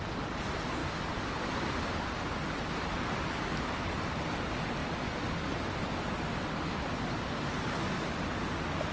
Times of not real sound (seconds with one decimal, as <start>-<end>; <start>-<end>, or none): none

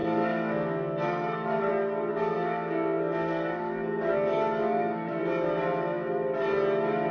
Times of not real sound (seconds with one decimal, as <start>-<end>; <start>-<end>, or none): 0.0-1.7; 2.1-5.2

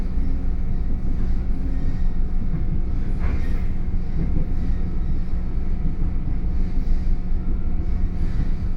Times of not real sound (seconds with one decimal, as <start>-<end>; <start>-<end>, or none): none

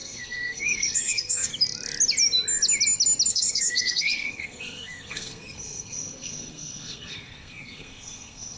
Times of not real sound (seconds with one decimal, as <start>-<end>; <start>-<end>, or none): 0.0-1.5; 3.3-8.6